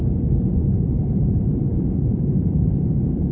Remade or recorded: remade